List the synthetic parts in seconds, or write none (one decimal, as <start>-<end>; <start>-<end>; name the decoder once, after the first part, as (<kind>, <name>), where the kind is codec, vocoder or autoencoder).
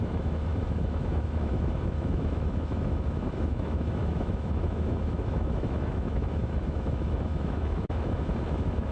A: 0.0-8.9 (autoencoder, DAC-VAE)